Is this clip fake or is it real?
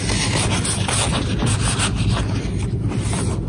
real